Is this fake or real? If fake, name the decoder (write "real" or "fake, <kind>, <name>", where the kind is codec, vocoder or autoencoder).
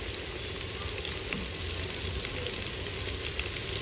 real